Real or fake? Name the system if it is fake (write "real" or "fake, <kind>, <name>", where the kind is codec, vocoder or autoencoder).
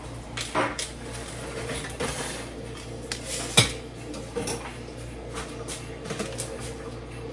real